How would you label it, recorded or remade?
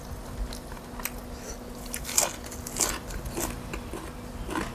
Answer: recorded